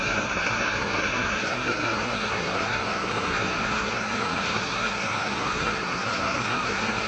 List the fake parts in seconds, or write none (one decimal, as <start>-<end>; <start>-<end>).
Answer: 0.0-7.1